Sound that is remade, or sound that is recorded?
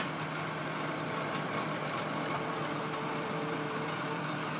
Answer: remade